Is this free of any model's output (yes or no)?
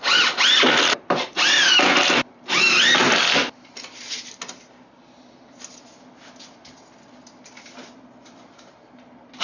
yes